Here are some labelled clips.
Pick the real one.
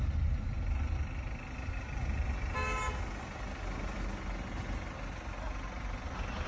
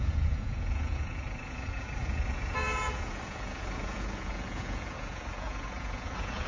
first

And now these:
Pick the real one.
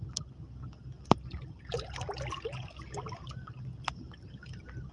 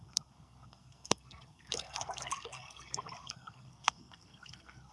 first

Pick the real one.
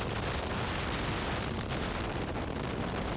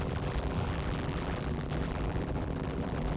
first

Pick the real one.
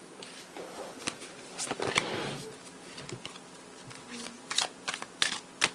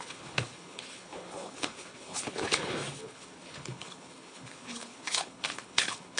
first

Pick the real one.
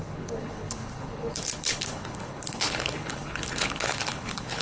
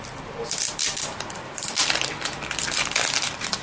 second